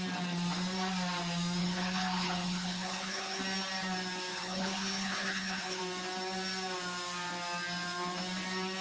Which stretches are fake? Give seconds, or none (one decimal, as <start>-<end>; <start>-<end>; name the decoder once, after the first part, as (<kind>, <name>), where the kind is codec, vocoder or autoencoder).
1.6-3.4 (codec, HILCodec); 4.3-5.8